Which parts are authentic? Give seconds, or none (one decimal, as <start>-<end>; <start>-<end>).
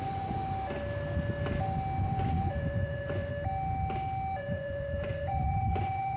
0.4-2.0; 3.3-4.4